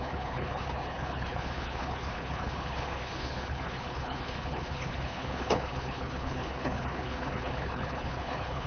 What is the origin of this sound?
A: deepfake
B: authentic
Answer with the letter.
A